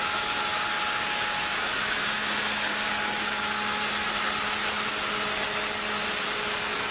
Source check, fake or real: real